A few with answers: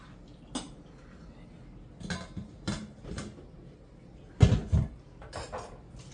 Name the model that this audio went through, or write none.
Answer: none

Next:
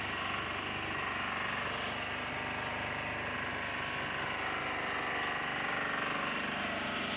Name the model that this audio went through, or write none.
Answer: none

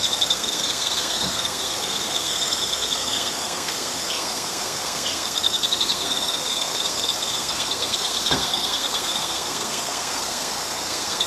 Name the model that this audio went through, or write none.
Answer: codec, SNAC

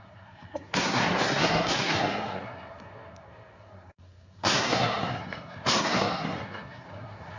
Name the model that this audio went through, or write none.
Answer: codec, SNAC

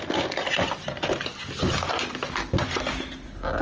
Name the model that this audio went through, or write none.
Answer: none